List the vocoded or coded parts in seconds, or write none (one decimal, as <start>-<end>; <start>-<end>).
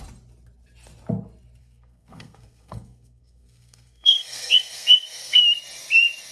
1.6-5.4